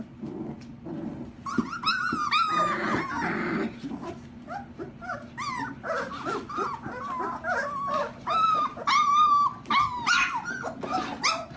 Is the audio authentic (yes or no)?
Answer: yes